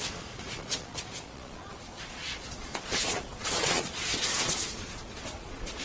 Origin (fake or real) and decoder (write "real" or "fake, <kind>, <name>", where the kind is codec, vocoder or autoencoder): fake, vocoder, Vocos